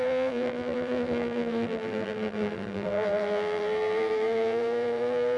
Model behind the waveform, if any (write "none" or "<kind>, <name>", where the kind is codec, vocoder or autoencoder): vocoder, BigVGAN v2